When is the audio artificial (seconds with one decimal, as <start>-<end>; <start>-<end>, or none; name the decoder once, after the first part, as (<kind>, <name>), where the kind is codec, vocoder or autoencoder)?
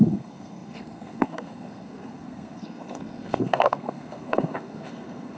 0.0-5.4 (codec, SNAC)